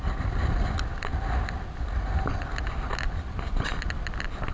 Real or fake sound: real